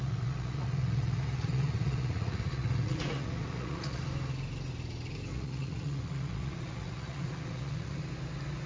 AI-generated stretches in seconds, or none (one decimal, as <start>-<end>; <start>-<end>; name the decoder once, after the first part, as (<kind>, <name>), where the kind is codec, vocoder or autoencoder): 0.0-4.0 (vocoder, Vocos); 5.3-8.0